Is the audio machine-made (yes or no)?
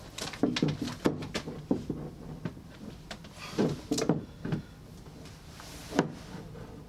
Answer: no